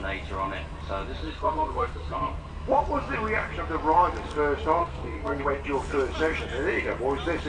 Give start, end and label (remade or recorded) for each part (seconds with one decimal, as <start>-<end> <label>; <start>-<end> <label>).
0.0-1.2 recorded; 1.2-2.5 remade; 2.5-4.8 recorded; 4.8-5.4 remade; 5.4-7.5 recorded